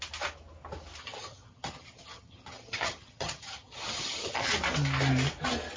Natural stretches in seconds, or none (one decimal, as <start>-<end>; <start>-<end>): 0.0-1.0; 4.5-5.8